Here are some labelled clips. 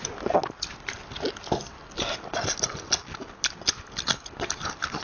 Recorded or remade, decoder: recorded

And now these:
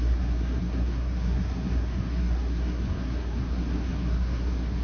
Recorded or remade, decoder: remade, codec, SNAC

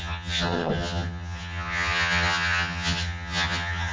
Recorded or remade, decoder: remade, vocoder, HiFi-GAN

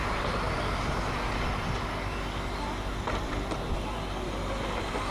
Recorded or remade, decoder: recorded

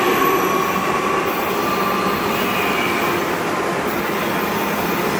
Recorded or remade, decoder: recorded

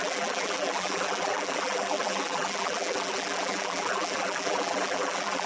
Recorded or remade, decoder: remade, vocoder, BigVGAN v2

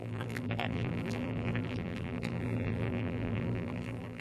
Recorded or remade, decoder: remade, vocoder, BigVGAN v2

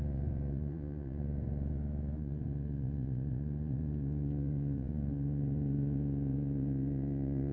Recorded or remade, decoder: remade, vocoder, Vocos